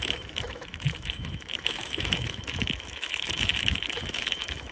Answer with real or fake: fake